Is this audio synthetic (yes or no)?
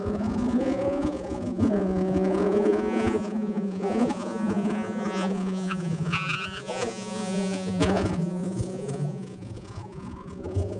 yes